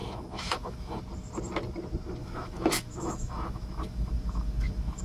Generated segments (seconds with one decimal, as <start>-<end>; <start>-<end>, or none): 0.0-1.0; 2.2-5.0